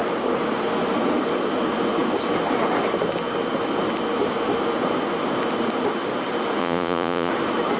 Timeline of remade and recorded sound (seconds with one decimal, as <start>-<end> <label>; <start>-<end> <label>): 0.0-6.6 recorded; 6.6-7.3 remade; 7.3-7.8 recorded